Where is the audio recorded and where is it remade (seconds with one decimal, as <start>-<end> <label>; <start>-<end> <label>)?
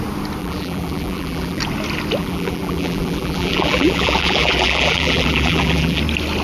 0.0-0.4 recorded; 0.4-1.6 remade; 1.6-2.2 recorded; 2.2-6.0 remade; 6.0-6.4 recorded